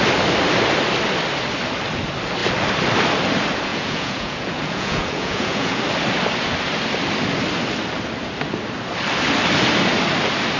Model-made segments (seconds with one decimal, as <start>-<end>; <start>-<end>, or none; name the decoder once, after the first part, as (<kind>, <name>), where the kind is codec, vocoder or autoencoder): 3.7-5.8 (vocoder, Vocos)